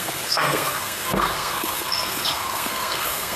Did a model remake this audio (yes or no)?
yes